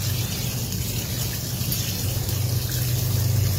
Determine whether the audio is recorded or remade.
recorded